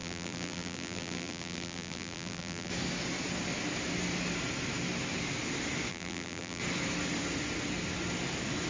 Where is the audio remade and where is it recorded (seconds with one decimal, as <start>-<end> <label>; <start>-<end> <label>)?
0.0-2.7 remade; 2.7-5.9 recorded; 5.9-6.6 remade; 6.6-8.7 recorded